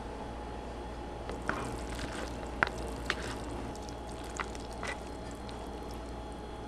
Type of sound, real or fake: real